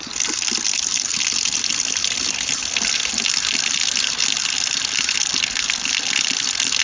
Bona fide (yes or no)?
yes